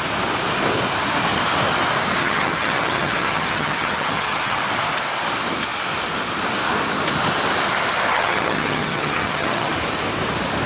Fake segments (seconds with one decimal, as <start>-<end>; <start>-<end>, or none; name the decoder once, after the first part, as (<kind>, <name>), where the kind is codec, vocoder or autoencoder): 2.2-4.6 (vocoder, HiFi-GAN); 8.1-9.7